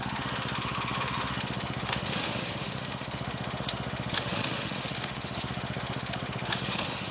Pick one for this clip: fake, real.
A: fake